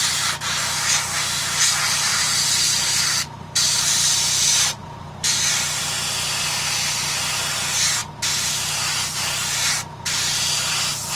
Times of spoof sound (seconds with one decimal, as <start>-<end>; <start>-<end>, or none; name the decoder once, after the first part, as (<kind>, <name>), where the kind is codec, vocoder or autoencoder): 2.1-5.8 (vocoder, BigVGAN v2); 8.0-11.2